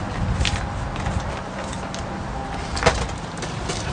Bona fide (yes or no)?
yes